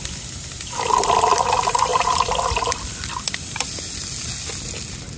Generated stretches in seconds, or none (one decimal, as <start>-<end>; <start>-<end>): none